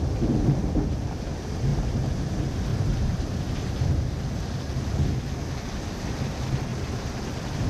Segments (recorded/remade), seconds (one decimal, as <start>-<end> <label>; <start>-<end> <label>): 0.0-1.7 recorded; 1.7-2.2 remade; 2.2-2.7 recorded; 2.7-4.2 remade; 4.2-6.7 recorded; 6.7-7.7 remade